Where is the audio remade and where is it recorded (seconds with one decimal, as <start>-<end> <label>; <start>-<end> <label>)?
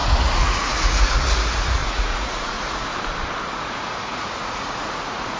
0.0-2.9 remade; 2.9-3.4 recorded; 3.4-5.4 remade